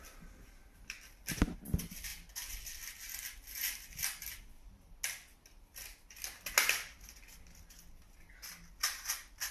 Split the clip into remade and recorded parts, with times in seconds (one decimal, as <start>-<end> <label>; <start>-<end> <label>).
0.0-9.5 recorded